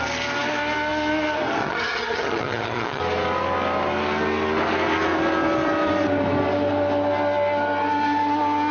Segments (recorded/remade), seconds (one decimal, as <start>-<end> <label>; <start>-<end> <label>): 0.0-1.6 recorded; 1.6-3.0 remade; 3.0-8.7 recorded